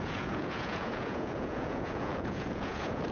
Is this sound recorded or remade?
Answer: remade